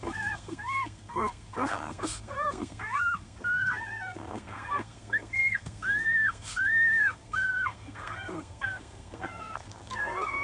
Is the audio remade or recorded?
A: remade